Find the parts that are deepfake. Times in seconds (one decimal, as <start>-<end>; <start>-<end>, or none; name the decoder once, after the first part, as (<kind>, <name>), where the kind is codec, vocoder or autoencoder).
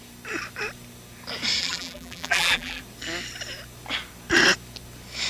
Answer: 1.6-2.8 (vocoder, BigVGAN v2)